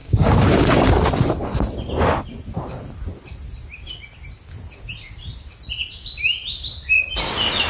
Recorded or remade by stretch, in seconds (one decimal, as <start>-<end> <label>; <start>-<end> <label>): 0.0-0.9 remade; 0.9-7.7 recorded